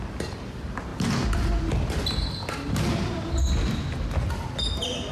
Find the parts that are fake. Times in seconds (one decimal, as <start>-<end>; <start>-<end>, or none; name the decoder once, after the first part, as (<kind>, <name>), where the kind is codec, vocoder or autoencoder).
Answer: none